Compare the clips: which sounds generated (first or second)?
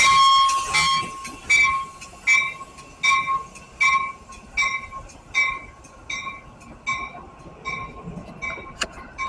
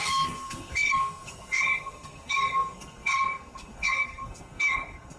second